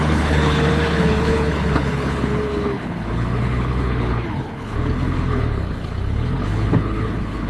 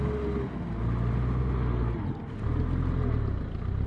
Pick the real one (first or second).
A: second